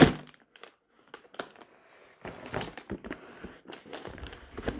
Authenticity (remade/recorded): recorded